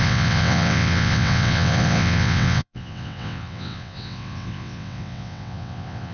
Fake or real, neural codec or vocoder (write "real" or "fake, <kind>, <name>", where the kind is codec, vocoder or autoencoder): fake, vocoder, WaveNeXt